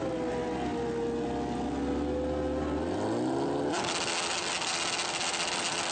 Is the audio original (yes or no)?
yes